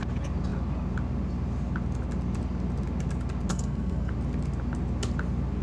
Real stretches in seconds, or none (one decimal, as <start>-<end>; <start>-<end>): 0.0-3.5; 4.1-5.6